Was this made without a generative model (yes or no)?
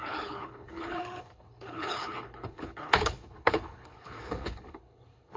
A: no